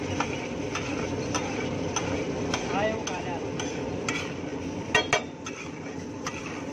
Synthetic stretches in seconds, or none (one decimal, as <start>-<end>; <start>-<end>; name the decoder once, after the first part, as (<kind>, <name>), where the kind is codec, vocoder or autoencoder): none